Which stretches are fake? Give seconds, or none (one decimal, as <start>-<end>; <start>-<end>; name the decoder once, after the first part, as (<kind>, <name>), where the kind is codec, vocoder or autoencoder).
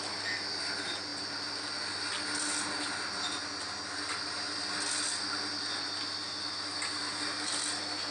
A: none